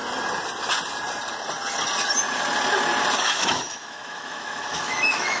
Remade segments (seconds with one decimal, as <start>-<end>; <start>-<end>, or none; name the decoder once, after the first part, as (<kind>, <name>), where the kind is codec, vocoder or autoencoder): 3.2-5.4 (autoencoder, DAC-VAE)